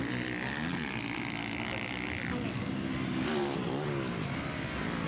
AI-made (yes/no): no